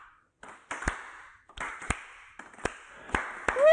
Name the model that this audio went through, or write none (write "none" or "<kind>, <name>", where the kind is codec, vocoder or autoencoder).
none